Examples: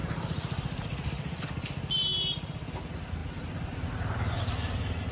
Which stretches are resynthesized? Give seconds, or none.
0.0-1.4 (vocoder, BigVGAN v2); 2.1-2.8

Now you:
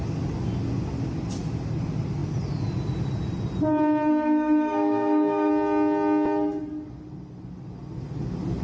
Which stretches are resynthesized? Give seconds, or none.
4.1-5.5 (codec, SNAC)

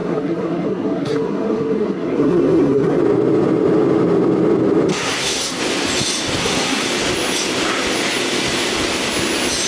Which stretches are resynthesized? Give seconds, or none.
0.0-3.0 (codec, SNAC); 4.9-5.6; 6.4-6.9

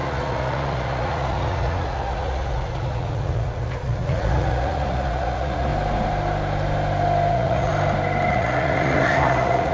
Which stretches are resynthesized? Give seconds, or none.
0.0-5.7 (vocoder, Vocos); 7.3-7.7; 8.3-9.7

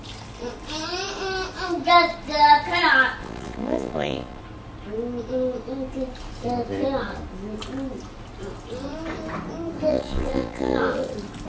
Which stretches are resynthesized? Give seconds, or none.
3.2-4.4 (vocoder, Vocos); 9.9-10.8

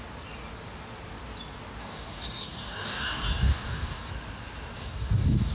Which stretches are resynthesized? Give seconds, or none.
1.8-4.1 (codec, DAC); 4.8-5.5

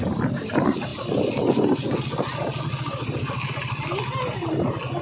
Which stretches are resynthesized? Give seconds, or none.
none

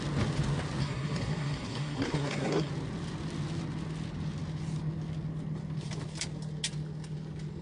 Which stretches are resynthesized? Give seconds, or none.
0.8-2.7 (codec, SNAC)